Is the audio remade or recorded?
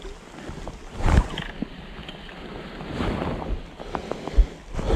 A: recorded